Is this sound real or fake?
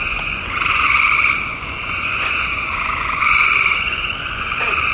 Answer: fake